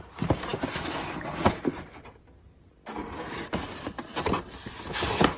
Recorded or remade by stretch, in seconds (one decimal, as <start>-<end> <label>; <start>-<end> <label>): 0.0-5.4 recorded